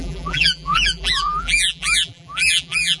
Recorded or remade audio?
remade